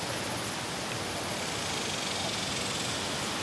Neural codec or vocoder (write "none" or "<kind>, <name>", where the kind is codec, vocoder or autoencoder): none